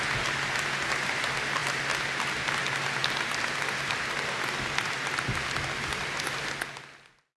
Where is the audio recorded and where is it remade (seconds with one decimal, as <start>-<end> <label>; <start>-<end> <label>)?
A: 0.0-7.4 recorded

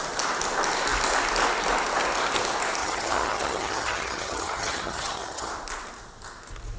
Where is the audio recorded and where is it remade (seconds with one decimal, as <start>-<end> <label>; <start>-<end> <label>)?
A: 0.0-2.8 recorded; 2.8-5.5 remade; 5.5-6.8 recorded